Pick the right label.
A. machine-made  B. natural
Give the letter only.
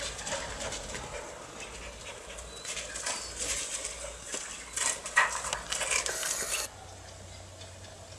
B